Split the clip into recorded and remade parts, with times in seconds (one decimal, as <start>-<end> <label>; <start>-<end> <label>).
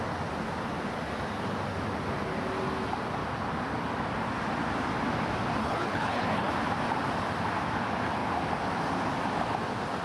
0.0-5.6 recorded; 5.6-6.5 remade; 6.5-10.0 recorded